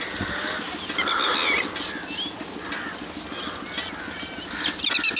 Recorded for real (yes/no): yes